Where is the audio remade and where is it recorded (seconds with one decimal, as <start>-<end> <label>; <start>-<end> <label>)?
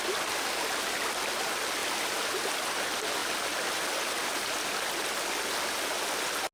0.0-1.8 recorded; 1.8-2.3 remade; 2.3-6.5 recorded